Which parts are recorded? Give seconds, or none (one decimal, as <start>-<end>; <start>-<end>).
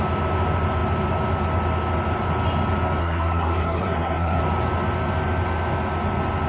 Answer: 0.0-3.0; 4.4-6.5